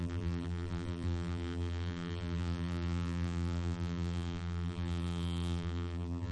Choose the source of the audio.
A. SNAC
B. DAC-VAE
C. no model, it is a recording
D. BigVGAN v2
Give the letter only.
D